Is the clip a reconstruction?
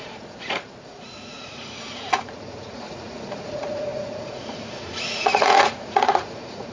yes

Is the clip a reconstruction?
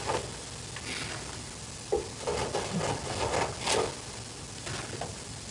no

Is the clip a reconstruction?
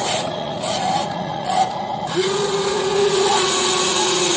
yes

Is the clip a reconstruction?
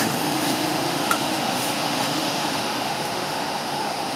yes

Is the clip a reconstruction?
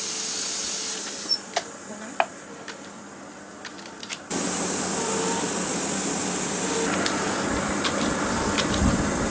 no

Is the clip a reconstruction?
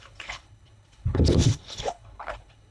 yes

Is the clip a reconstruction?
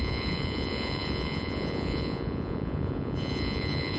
yes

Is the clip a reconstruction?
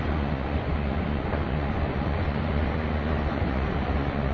yes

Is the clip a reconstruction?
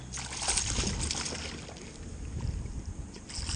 no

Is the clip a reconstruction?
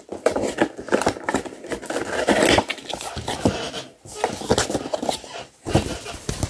no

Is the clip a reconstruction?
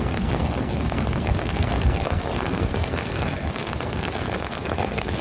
yes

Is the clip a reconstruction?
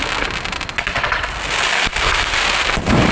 no